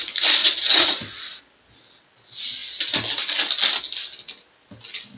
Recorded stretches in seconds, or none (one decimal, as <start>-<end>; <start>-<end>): 0.0-0.4; 1.4-5.2